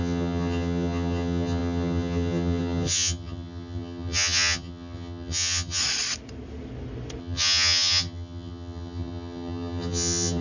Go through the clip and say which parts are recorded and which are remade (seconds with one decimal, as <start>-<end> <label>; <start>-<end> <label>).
0.0-5.8 remade; 5.8-7.2 recorded; 7.2-10.4 remade